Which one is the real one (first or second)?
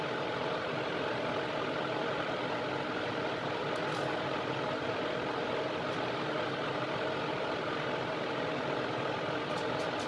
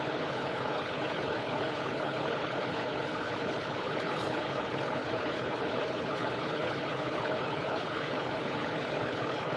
first